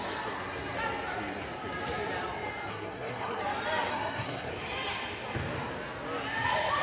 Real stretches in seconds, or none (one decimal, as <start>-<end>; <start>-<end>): 0.0-2.7; 3.4-3.9; 4.5-6.8